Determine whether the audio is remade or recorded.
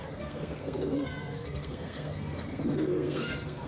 remade